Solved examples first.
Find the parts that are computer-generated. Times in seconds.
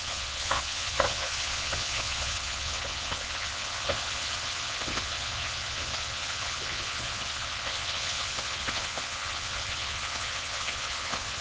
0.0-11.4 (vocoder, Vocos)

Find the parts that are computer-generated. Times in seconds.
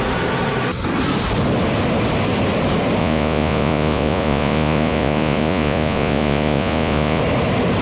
3.0-7.2 (vocoder, Vocos)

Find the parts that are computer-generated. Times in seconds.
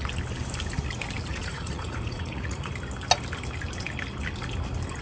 1.3-2.7 (vocoder, Vocos)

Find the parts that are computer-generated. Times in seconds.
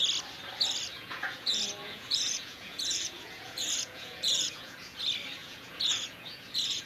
0.9-5.0 (vocoder, Vocos); 5.4-6.9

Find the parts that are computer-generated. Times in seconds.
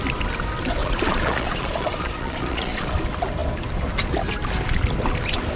0.8-3.0 (vocoder, Vocos)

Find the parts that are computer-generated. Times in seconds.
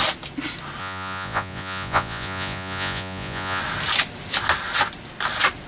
0.8-3.6 (vocoder, Vocos)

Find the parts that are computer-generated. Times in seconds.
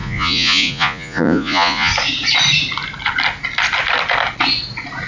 0.0-1.9 (vocoder, Vocos)